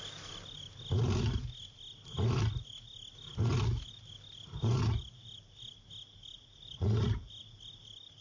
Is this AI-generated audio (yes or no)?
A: no